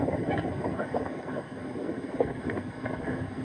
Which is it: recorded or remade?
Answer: remade